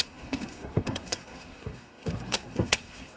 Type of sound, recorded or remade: remade